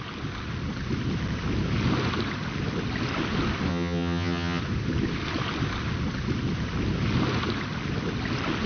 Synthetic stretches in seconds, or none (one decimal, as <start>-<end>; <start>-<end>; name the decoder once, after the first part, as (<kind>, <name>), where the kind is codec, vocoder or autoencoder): 3.7-4.6 (vocoder, HiFi-GAN)